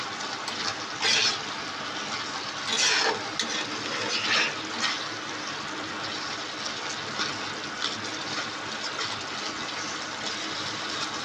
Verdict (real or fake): real